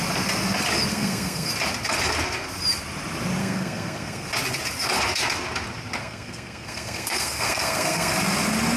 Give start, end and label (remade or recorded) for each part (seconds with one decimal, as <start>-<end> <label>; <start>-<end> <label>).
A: 0.0-0.9 recorded; 0.9-1.5 remade; 1.5-3.4 recorded; 3.4-4.3 remade; 4.3-6.0 recorded; 6.0-8.1 remade; 8.1-8.8 recorded